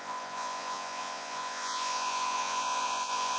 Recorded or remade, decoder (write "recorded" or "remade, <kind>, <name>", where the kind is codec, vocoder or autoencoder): remade, vocoder, Vocos